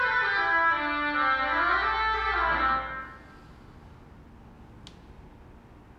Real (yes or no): yes